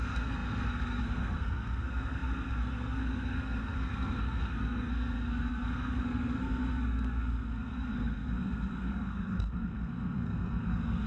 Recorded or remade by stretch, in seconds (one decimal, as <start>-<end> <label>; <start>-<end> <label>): 0.0-11.1 remade